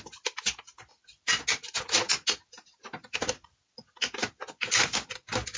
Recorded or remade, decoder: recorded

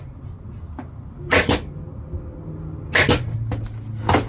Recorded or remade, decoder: recorded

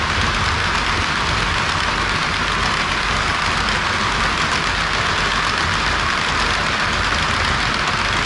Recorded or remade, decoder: recorded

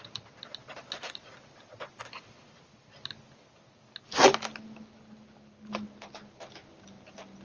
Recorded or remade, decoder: recorded